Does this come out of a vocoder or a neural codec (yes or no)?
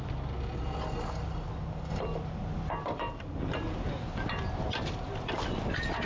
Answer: no